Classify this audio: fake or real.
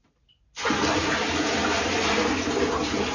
real